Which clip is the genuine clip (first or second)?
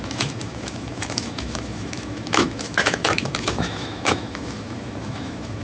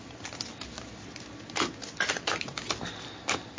second